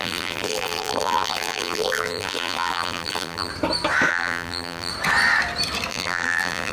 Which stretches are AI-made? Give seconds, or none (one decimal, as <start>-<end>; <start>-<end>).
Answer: 0.0-3.5; 4.1-4.9; 5.9-6.7